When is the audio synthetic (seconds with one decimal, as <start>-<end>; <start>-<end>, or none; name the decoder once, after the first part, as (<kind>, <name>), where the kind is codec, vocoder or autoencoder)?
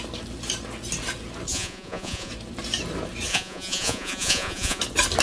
1.5-2.3 (vocoder, Vocos); 3.3-4.8